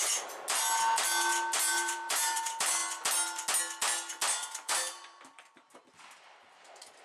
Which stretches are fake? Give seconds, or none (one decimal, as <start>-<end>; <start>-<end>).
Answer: 1.7-2.4; 4.4-5.8